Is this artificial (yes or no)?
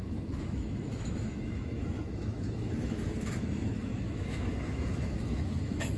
yes